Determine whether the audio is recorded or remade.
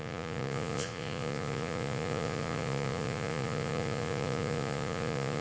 remade